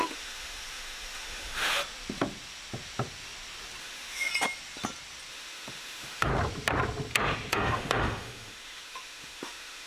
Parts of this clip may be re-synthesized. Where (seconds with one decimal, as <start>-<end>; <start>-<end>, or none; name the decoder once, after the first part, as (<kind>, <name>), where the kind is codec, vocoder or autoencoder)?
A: 0.0-1.8 (autoencoder, DAC-VAE); 3.8-4.3; 5.3-6.3; 7.5-9.9

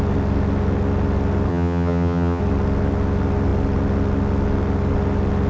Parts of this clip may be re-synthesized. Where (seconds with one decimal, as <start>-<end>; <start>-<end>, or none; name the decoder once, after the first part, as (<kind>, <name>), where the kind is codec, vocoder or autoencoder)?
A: 1.5-2.4 (vocoder, HiFi-GAN)

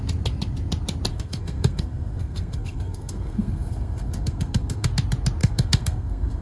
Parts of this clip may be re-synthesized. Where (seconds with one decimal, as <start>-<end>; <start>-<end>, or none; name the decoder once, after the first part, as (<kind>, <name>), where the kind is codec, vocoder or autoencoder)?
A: 1.1-4.9 (codec, SNAC); 5.4-6.4